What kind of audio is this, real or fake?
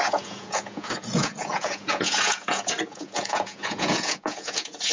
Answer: fake